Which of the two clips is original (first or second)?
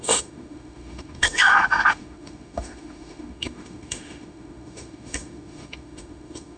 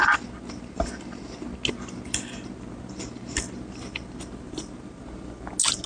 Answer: second